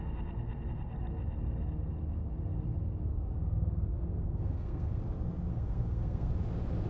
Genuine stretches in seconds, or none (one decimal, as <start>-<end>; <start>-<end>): 0.0-3.1; 5.0-5.5; 6.3-6.9